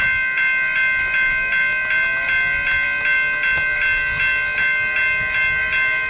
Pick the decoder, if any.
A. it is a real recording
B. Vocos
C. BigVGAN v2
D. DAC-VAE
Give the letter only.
A